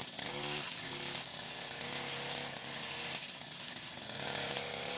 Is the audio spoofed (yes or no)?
no